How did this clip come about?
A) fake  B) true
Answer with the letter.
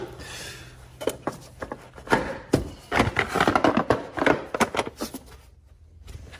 B